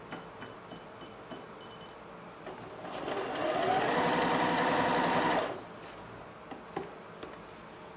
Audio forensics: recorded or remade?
recorded